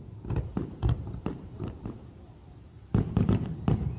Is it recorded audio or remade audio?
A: remade